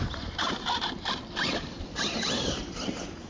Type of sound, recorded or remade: remade